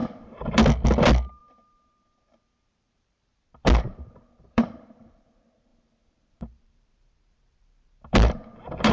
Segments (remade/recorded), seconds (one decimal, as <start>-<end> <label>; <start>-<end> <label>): 0.0-0.6 remade; 0.6-1.4 recorded; 1.4-5.2 remade; 5.2-5.7 recorded; 5.7-8.9 remade